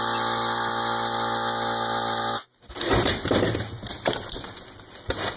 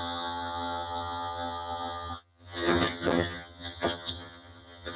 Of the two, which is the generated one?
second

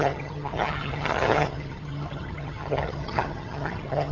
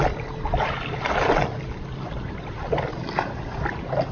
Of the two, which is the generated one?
first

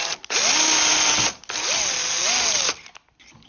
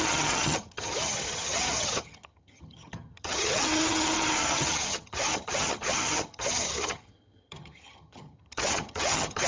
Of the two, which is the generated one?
second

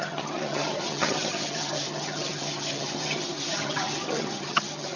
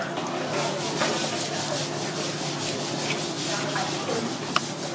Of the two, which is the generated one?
first